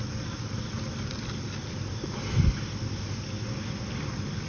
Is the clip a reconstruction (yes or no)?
no